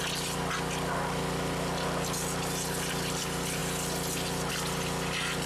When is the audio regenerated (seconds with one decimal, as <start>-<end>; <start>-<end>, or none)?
none